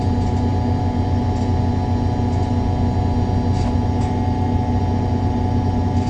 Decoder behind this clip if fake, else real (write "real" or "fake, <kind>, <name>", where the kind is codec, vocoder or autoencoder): real